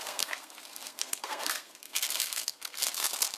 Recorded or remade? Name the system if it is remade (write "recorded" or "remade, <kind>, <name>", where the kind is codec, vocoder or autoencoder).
remade, codec, SNAC